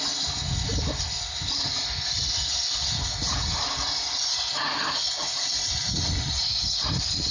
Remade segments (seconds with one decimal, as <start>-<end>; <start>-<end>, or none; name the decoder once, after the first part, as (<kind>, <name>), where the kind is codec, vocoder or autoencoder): 5.8-6.6 (vocoder, Vocos)